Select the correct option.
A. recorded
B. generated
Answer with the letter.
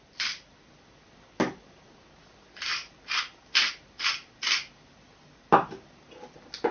A